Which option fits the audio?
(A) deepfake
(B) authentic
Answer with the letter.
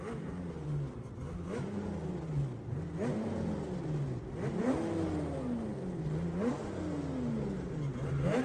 B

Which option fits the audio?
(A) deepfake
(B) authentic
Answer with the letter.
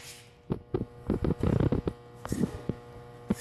B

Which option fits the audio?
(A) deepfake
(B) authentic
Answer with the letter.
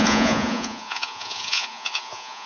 A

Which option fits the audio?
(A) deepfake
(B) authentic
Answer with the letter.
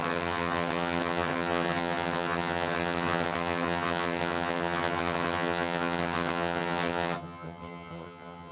A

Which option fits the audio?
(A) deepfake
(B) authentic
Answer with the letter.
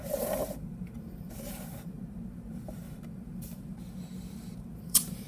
A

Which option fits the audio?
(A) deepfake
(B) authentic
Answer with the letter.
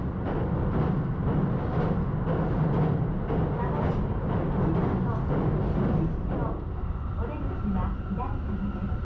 B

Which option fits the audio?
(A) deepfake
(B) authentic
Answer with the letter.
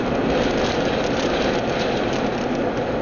B